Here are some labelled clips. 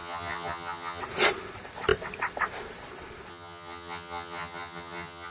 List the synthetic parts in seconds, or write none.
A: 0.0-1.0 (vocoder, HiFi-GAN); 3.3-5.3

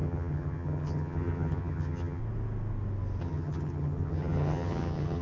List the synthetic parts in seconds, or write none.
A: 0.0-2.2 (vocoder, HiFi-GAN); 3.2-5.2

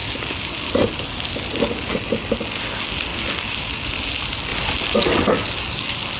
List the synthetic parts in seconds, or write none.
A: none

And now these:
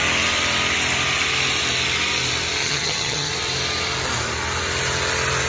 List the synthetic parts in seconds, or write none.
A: 2.6-3.3 (vocoder, HiFi-GAN)

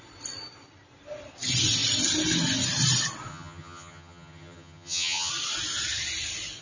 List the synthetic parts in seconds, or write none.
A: 3.3-5.3 (vocoder, HiFi-GAN)

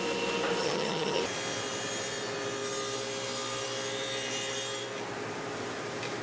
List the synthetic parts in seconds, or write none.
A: 0.6-1.2 (vocoder, HiFi-GAN)

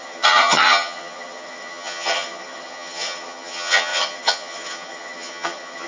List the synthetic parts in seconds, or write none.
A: 0.0-5.9 (vocoder, HiFi-GAN)

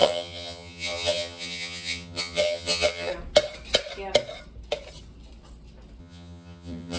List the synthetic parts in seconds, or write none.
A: 0.0-3.1 (vocoder, HiFi-GAN); 6.0-7.0